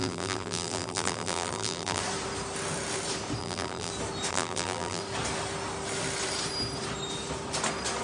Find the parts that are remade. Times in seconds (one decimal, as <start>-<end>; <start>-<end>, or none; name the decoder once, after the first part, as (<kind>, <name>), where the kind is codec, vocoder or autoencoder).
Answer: 0.0-2.0 (vocoder, BigVGAN v2); 3.4-3.9; 4.3-5.0